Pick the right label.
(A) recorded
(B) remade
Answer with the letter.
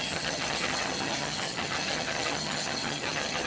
B